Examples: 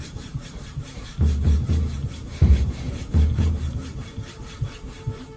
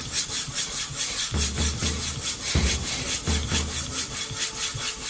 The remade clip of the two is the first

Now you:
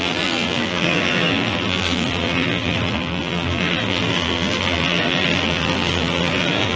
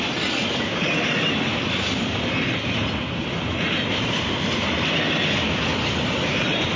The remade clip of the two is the first